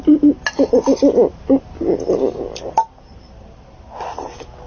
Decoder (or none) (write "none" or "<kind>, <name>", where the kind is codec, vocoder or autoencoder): none